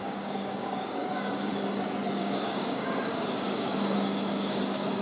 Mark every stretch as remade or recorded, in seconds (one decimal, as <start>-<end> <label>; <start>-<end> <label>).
0.0-1.5 remade; 1.5-2.2 recorded; 2.2-5.0 remade